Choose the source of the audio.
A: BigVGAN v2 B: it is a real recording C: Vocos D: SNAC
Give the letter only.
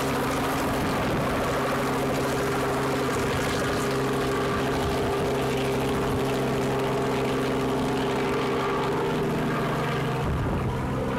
B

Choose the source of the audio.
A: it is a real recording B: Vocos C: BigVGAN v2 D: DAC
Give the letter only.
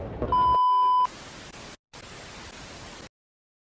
A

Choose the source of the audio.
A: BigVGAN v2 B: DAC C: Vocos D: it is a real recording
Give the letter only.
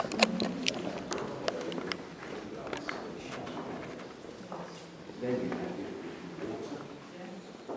D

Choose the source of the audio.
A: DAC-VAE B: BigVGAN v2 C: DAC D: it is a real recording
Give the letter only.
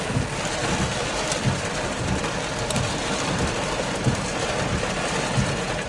D